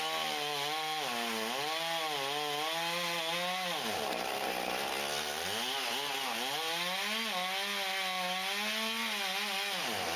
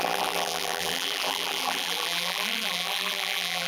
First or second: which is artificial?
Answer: second